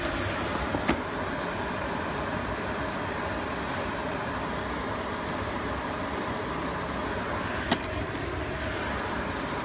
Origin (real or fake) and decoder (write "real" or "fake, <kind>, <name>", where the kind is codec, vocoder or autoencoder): real